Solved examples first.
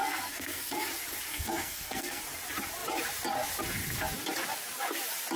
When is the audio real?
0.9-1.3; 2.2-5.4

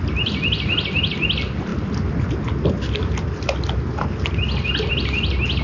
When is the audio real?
0.0-5.6

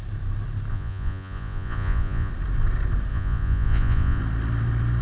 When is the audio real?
0.0-0.7; 2.3-3.1; 4.2-5.0

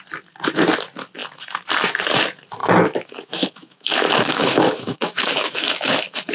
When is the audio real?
0.0-2.6

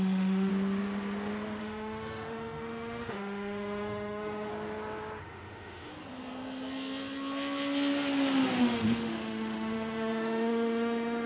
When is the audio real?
0.5-1.6; 4.5-5.2; 5.9-8.6